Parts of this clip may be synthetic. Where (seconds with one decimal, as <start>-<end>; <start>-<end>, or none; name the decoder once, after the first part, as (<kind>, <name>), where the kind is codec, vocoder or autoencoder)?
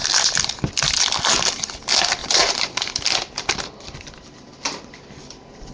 2.2-2.9 (vocoder, BigVGAN v2)